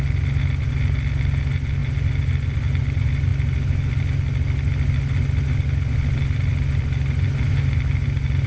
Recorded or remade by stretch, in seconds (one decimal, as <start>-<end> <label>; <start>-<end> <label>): 0.0-8.5 recorded